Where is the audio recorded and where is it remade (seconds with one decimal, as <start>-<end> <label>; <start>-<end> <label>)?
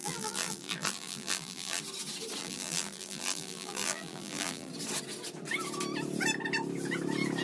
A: 0.0-1.8 remade; 1.8-2.4 recorded; 2.4-4.7 remade; 4.7-7.4 recorded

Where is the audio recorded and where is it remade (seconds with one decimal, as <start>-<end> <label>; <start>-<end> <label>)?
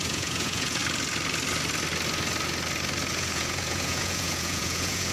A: 0.0-0.8 remade; 0.8-3.1 recorded; 3.1-5.1 remade